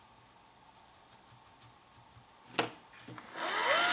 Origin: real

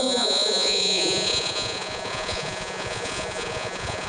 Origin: fake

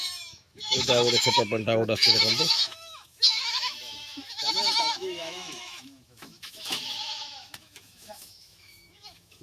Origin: fake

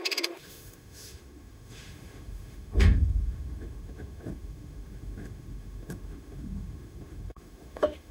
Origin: fake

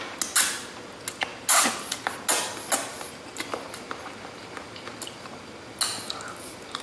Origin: real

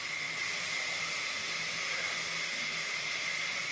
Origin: real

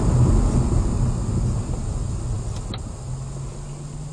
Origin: real